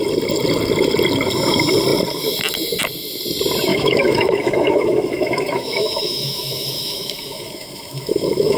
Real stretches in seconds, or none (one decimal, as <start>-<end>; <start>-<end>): 0.0-3.7